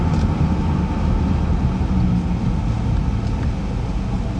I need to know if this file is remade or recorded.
recorded